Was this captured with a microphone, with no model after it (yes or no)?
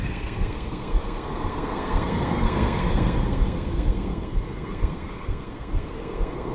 no